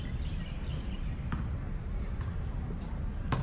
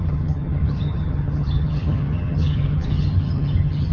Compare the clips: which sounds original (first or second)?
first